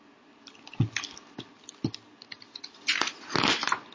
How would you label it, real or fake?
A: real